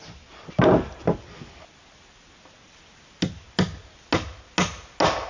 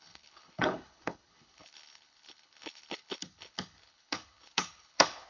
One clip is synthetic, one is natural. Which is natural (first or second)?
first